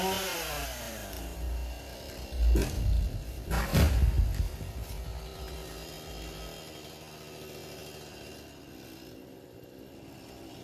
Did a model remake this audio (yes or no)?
no